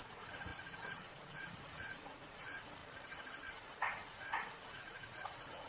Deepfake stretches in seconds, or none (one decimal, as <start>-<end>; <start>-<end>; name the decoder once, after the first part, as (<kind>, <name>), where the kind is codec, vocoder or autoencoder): 0.0-2.8 (vocoder, Vocos); 3.5-5.7